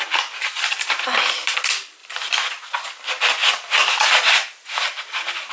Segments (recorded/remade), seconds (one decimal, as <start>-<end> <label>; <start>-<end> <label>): 0.0-5.5 recorded